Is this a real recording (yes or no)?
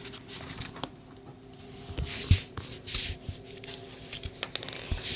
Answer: yes